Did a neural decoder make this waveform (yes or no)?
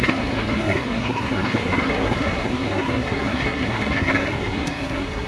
yes